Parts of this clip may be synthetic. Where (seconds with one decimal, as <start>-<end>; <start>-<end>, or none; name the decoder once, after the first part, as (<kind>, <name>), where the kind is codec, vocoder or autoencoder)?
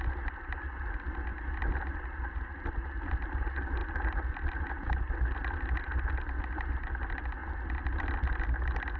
none